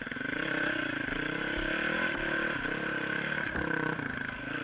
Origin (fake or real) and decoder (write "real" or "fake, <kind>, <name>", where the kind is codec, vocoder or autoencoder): real